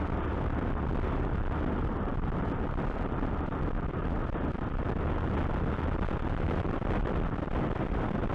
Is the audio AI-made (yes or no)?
no